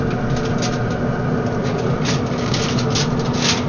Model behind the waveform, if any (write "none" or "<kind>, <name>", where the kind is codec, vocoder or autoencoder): none